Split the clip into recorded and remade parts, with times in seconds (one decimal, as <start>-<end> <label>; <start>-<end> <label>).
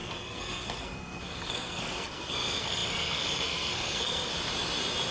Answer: 0.0-4.3 remade; 4.3-5.1 recorded